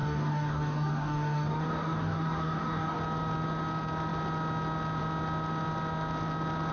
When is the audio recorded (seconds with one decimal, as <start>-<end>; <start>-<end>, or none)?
3.0-6.7